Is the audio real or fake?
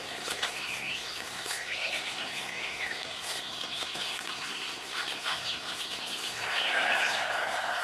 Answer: fake